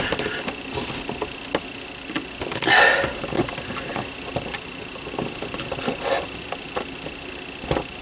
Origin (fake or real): real